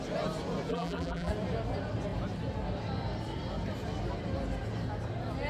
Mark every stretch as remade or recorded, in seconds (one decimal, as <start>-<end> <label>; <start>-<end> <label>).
0.0-0.7 recorded; 0.7-1.3 remade; 1.3-5.5 recorded